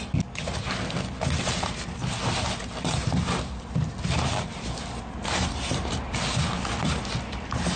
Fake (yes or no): no